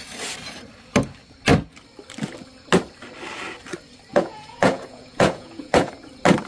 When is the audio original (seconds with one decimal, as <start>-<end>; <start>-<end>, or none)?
0.0-4.1; 5.9-6.5

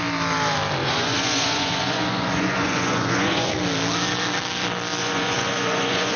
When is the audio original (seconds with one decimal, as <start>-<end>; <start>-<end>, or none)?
0.0-0.8; 3.5-5.0

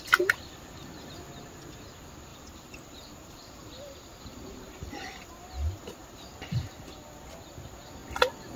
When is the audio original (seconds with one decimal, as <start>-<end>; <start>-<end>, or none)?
0.0-2.3; 5.3-8.6

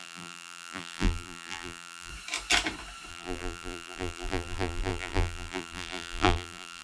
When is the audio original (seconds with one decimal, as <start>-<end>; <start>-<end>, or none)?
2.1-3.1

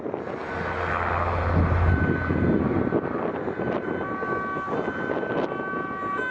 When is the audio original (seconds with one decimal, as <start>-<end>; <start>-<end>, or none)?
0.0-6.3

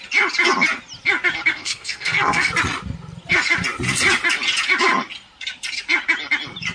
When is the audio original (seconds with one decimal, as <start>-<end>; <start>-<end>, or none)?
0.0-1.5; 2.5-6.7

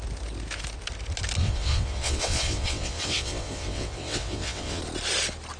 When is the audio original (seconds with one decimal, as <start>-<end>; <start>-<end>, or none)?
0.0-1.4; 4.8-5.6